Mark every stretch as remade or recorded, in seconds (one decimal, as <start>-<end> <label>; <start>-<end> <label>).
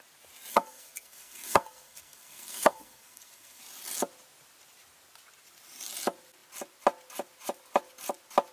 0.0-0.5 recorded; 0.5-3.6 remade; 3.6-8.5 recorded